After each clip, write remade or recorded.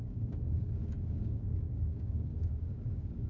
remade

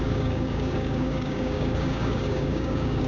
remade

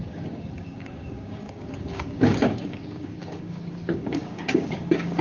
remade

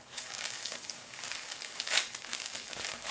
remade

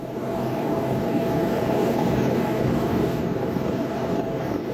remade